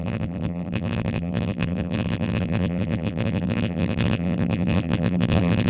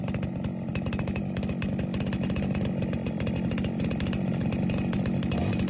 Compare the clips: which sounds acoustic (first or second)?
second